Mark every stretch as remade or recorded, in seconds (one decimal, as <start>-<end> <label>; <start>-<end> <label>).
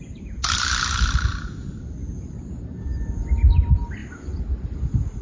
0.0-5.2 recorded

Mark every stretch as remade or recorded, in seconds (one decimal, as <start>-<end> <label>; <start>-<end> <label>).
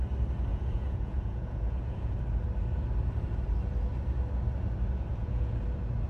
0.0-0.5 recorded; 0.5-2.2 remade; 2.2-5.1 recorded; 5.1-5.6 remade; 5.6-6.1 recorded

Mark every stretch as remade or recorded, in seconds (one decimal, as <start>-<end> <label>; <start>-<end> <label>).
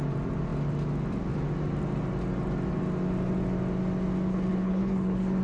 0.0-4.3 recorded; 4.3-5.4 remade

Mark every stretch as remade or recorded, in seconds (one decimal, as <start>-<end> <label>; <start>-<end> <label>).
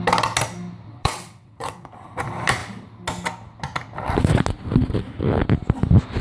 0.0-0.9 recorded; 0.9-1.9 remade; 1.9-6.2 recorded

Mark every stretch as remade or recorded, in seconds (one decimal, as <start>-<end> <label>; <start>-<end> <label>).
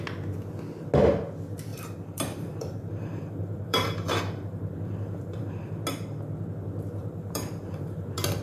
0.0-1.7 recorded; 1.7-5.5 remade; 5.5-7.0 recorded; 7.0-8.4 remade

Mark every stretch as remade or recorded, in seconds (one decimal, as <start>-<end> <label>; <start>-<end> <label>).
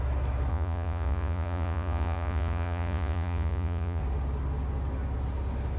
0.0-0.5 recorded; 0.5-4.0 remade; 4.0-5.8 recorded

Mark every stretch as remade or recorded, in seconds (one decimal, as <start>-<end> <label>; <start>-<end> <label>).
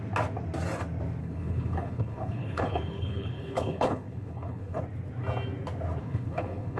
0.0-1.2 recorded; 1.2-4.8 remade; 4.8-6.0 recorded; 6.0-6.8 remade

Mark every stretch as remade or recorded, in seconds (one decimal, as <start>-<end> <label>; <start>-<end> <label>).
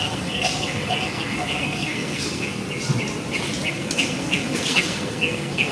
0.0-2.6 remade; 2.6-3.7 recorded; 3.7-5.7 remade